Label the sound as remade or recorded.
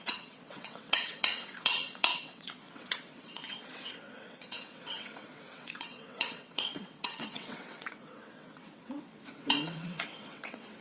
remade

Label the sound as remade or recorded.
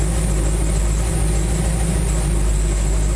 recorded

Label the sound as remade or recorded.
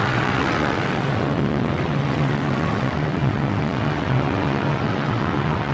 remade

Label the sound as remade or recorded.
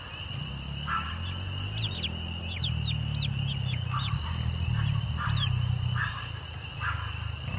recorded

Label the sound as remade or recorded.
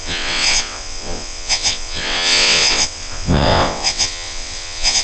remade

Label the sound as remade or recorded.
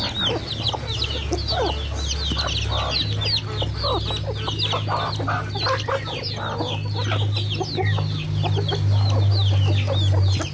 recorded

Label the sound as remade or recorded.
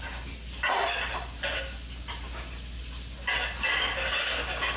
recorded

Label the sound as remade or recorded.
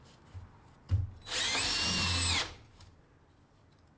recorded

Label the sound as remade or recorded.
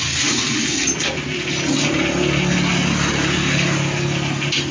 recorded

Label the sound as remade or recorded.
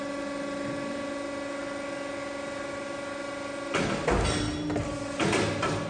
recorded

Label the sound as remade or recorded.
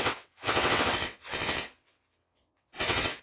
remade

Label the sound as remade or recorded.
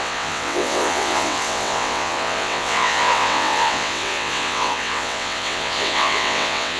remade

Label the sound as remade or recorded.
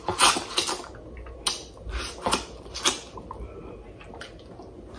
recorded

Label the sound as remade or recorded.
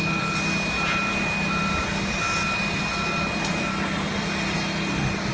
recorded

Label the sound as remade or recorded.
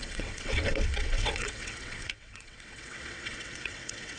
remade